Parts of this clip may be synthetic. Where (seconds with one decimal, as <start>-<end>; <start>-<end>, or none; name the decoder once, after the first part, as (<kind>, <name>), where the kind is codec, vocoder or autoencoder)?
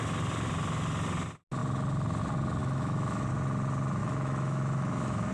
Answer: 2.6-3.3 (autoencoder, DAC-VAE); 4.0-5.3